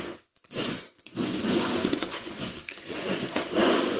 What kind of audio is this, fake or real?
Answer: fake